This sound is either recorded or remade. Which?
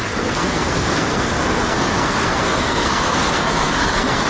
remade